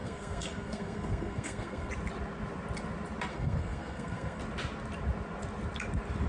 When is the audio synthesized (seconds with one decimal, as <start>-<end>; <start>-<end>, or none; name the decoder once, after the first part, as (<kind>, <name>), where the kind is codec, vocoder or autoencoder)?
0.0-1.9 (codec, SNAC); 3.3-4.4